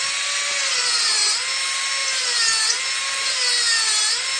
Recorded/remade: recorded